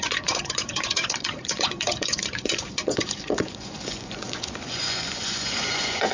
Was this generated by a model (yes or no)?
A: yes